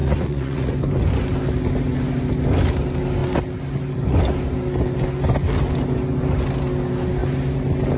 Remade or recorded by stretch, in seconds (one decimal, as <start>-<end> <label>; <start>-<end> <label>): 0.0-0.7 remade; 0.7-8.0 recorded